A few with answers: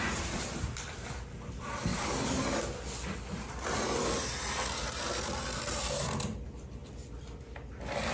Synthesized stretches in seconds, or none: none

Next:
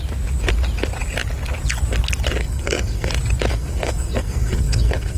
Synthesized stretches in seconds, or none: 2.4-3.1 (codec, SNAC); 3.5-5.2

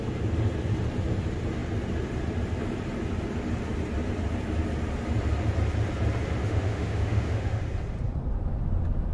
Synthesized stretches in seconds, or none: 6.4-7.6 (autoencoder, DAC-VAE)

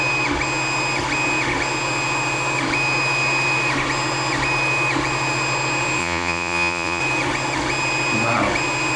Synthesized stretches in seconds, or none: 6.0-7.0 (vocoder, Vocos)

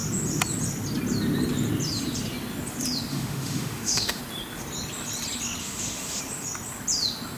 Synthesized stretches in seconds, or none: 3.1-4.2 (autoencoder, DAC-VAE); 5.6-6.2

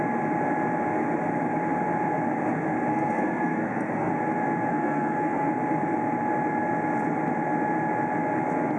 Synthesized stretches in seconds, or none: 2.9-4.1 (codec, SNAC); 4.7-5.5

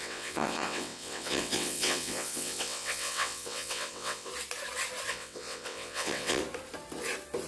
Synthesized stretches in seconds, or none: 0.0-4.3 (vocoder, WaveNeXt); 5.1-6.4

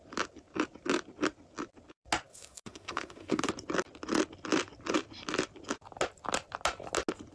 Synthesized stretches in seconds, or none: 2.3-3.5 (autoencoder, DAC-VAE)